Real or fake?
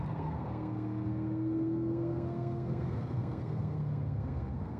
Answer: fake